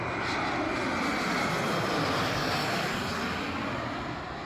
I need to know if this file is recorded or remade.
recorded